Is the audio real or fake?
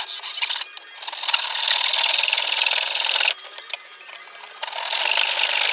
real